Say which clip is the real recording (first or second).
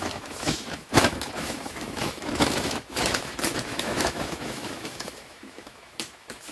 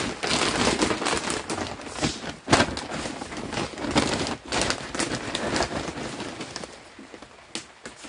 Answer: second